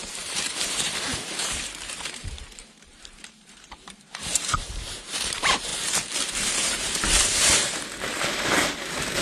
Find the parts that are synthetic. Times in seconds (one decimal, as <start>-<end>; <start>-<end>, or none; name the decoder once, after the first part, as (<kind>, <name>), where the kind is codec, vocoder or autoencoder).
0.0-5.7 (vocoder, BigVGAN v2); 6.3-9.2